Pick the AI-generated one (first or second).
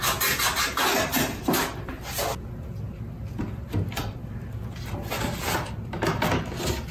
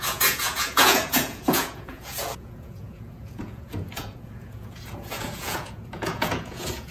second